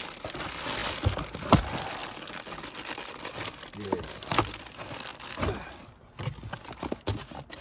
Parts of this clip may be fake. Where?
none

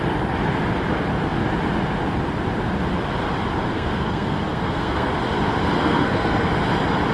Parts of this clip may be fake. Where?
3.6-5.1 (codec, SNAC); 5.8-6.5

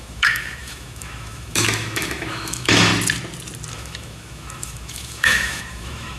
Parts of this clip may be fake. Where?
0.0-2.9 (autoencoder, DAC-VAE); 3.7-6.2